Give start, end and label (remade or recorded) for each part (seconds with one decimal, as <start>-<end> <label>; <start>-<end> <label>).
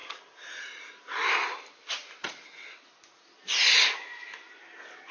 0.0-2.2 recorded; 2.2-2.9 remade; 2.9-5.1 recorded